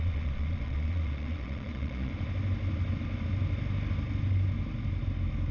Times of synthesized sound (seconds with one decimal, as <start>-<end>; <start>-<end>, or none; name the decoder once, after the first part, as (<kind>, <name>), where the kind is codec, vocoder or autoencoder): 0.0-2.1 (vocoder, Vocos)

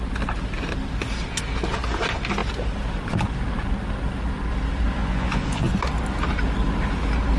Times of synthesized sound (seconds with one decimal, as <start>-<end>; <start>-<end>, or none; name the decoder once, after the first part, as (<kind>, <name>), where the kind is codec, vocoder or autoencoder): 5.0-5.7 (vocoder, Vocos)

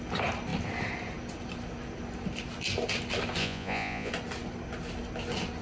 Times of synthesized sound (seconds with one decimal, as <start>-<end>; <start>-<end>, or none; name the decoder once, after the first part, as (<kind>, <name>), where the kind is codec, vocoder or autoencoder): 3.4-4.1 (vocoder, Vocos)

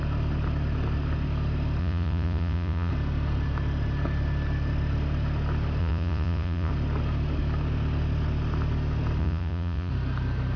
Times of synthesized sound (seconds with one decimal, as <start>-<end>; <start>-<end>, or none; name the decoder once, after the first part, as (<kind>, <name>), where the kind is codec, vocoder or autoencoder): 1.8-2.9 (vocoder, Vocos); 5.8-6.7; 9.2-9.9

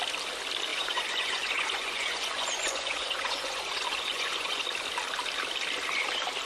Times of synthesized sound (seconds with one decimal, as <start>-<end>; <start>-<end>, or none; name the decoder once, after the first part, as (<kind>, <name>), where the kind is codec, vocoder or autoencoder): 0.7-4.6 (vocoder, Vocos)